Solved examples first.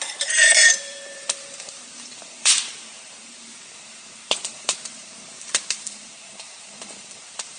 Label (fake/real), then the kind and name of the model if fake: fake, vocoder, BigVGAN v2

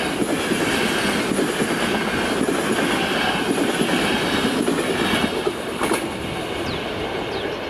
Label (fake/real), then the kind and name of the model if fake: real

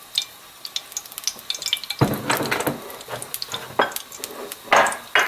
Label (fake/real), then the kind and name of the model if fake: real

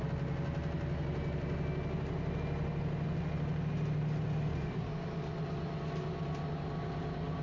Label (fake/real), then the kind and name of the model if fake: real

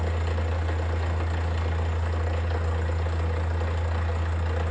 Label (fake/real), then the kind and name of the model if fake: real